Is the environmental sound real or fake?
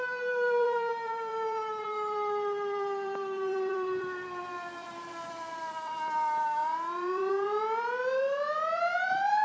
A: fake